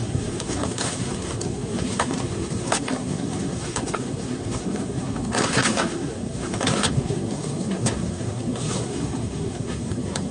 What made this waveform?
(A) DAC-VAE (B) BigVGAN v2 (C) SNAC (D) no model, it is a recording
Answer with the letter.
C